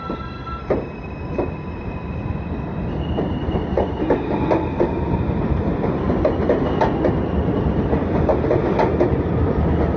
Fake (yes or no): no